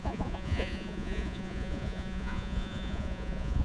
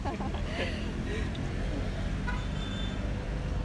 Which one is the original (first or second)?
second